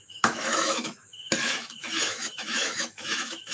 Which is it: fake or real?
fake